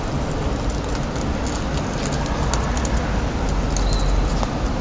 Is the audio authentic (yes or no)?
yes